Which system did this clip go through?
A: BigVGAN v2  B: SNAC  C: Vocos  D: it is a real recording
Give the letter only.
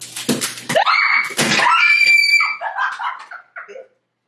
D